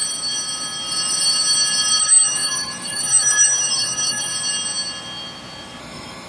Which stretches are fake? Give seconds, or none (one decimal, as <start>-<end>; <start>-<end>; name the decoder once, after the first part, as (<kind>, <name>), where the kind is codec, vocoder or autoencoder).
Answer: 2.0-4.3 (autoencoder, DAC-VAE); 5.8-6.3